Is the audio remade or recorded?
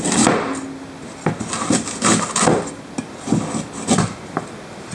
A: recorded